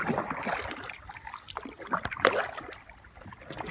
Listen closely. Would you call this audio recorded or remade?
recorded